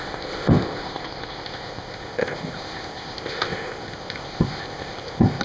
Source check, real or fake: fake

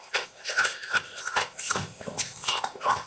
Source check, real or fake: fake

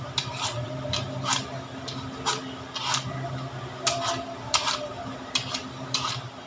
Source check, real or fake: real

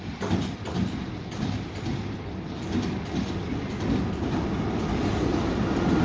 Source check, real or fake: real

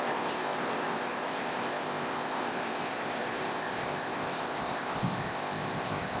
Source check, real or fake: fake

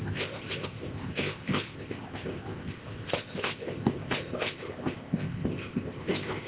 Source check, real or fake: fake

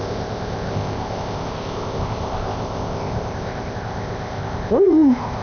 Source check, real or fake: fake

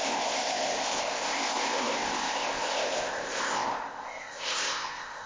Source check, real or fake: fake